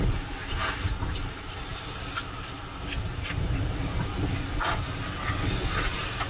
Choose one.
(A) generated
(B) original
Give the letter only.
B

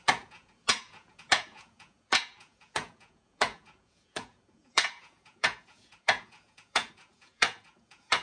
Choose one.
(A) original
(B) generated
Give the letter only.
B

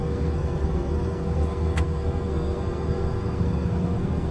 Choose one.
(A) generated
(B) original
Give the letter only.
A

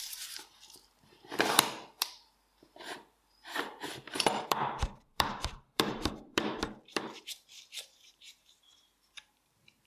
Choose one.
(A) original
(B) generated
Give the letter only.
B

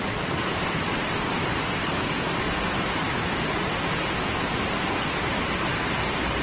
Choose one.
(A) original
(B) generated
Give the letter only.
A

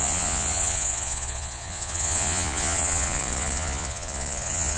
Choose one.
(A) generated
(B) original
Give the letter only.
A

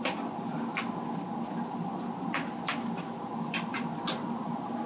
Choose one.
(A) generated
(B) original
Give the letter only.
B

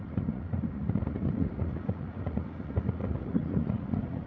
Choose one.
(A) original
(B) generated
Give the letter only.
B